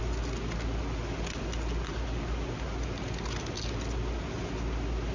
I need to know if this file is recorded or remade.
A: recorded